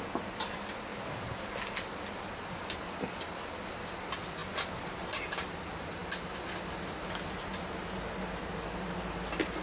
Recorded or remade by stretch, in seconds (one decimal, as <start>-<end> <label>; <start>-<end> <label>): 0.0-9.6 recorded